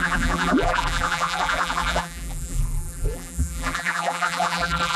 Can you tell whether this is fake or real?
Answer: fake